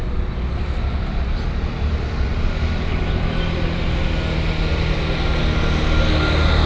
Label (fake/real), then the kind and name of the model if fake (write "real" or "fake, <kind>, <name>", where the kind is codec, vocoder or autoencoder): real